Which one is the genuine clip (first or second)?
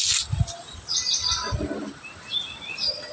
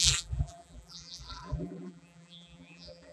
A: first